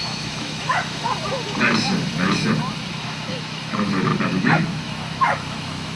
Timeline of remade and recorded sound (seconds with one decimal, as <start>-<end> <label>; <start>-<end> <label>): 0.0-1.0 remade; 1.0-2.9 recorded; 2.9-4.1 remade; 4.1-4.7 recorded; 4.7-6.0 remade